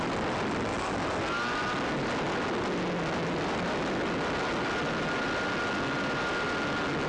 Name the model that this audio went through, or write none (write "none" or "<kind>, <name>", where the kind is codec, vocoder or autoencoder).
none